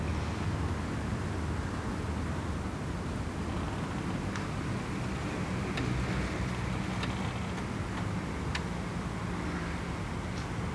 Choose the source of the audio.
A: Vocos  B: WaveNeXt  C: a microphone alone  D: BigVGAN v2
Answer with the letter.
C